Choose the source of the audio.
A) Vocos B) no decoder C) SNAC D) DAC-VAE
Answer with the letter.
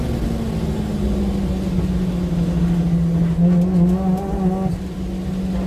B